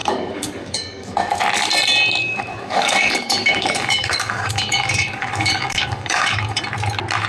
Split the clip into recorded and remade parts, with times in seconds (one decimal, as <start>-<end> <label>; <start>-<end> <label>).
0.0-1.4 remade; 1.4-2.2 recorded; 2.2-6.6 remade; 6.6-7.3 recorded